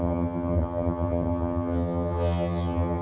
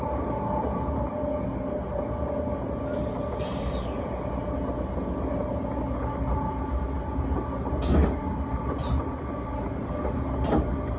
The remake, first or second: first